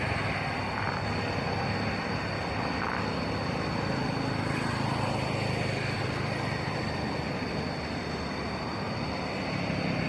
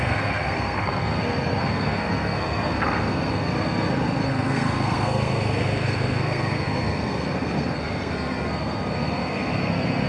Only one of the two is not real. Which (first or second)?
second